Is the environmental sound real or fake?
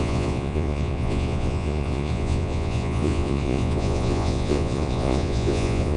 fake